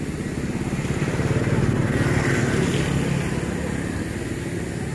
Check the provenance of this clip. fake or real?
real